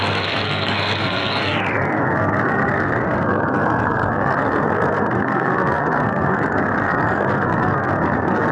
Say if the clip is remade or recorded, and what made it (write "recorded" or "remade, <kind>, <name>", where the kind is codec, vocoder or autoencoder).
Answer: remade, codec, SNAC